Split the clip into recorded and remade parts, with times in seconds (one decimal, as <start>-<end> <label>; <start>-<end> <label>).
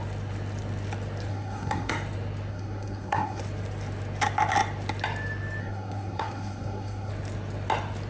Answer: 0.0-1.3 recorded; 1.3-1.9 remade; 1.9-2.5 recorded; 2.5-3.4 remade; 3.4-5.6 recorded; 5.6-7.1 remade; 7.1-8.1 recorded